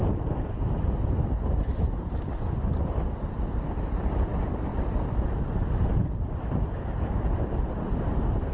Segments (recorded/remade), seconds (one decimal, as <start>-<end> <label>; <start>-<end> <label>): 0.0-4.3 remade; 4.3-4.7 recorded; 4.7-6.9 remade; 6.9-8.5 recorded

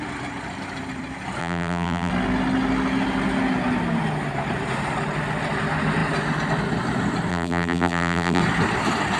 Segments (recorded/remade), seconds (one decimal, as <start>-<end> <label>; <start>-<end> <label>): 0.0-1.4 recorded; 1.4-2.1 remade; 2.1-7.3 recorded; 7.3-8.4 remade; 8.4-9.2 recorded

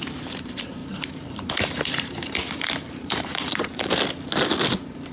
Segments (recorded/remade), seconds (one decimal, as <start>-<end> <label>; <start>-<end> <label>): 0.0-0.8 recorded; 0.8-3.9 remade; 3.9-5.1 recorded

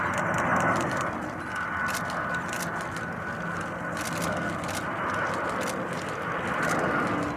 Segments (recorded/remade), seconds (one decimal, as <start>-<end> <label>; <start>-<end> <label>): 0.0-7.4 recorded

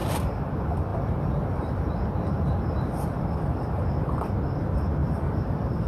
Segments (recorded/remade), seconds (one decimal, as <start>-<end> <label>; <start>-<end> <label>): 0.0-0.5 remade; 0.5-0.9 recorded; 0.9-3.8 remade; 3.8-5.0 recorded; 5.0-5.9 remade

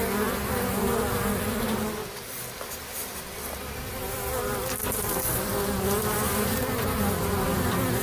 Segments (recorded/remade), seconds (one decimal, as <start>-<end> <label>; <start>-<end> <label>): 0.0-8.0 recorded

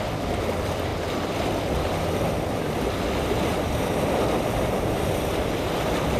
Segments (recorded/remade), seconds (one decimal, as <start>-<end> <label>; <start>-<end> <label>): 0.0-0.9 remade; 0.9-4.4 recorded; 4.4-5.3 remade; 5.3-6.2 recorded

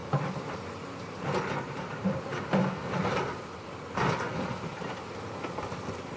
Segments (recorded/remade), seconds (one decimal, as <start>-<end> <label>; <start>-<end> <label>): 0.0-2.6 remade; 2.6-6.2 recorded